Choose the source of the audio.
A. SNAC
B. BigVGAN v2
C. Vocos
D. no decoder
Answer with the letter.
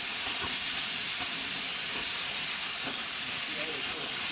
B